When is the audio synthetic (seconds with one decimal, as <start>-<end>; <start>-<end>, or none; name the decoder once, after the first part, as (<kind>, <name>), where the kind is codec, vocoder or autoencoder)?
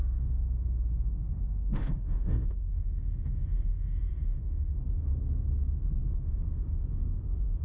0.0-5.1 (autoencoder, DAC-VAE); 6.1-7.6